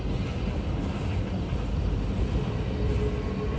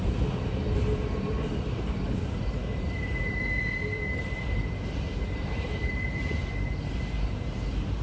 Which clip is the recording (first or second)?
first